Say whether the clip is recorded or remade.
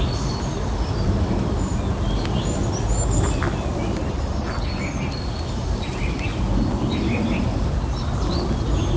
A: recorded